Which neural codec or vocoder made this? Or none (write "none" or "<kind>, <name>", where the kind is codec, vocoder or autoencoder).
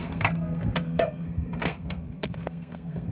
codec, SNAC